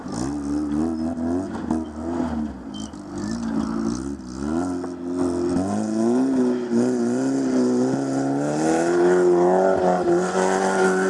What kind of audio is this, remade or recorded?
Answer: recorded